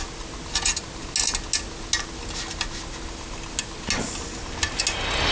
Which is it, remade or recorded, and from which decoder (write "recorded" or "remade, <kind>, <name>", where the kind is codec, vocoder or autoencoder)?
recorded